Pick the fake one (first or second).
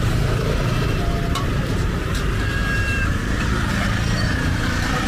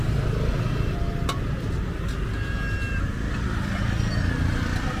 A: first